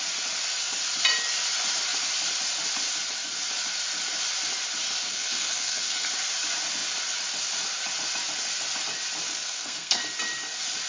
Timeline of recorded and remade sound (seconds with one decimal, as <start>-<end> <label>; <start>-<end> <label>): 0.0-5.1 recorded; 5.1-6.1 remade; 6.1-9.3 recorded; 9.3-10.0 remade; 10.0-10.9 recorded